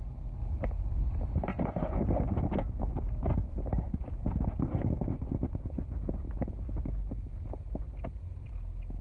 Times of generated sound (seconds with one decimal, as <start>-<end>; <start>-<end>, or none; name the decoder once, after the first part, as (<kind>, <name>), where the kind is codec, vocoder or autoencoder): none